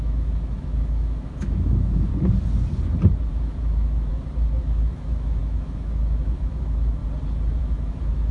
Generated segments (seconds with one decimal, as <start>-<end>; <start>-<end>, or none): 0.0-2.1; 3.3-4.1; 4.6-7.0; 7.6-8.3